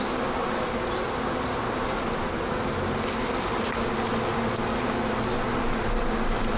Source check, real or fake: real